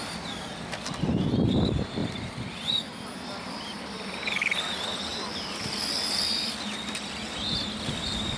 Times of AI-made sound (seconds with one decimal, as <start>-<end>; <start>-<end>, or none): 0.0-0.5; 1.2-5.1; 7.6-8.4